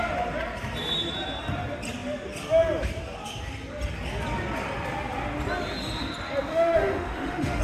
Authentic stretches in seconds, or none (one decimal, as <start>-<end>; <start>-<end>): 0.0-6.5